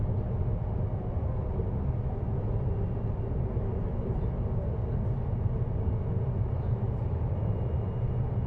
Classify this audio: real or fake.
real